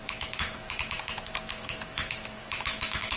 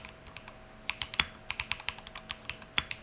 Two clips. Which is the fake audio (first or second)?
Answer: first